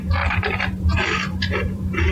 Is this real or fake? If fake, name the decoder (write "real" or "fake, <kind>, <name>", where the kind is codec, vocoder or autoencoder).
fake, vocoder, BigVGAN v2